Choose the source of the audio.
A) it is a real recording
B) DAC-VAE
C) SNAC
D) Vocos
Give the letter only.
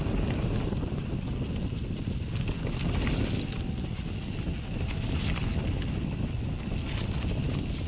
A